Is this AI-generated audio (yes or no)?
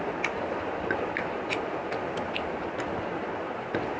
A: no